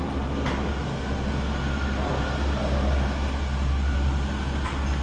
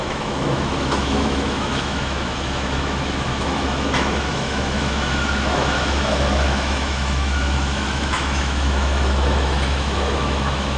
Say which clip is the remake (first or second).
second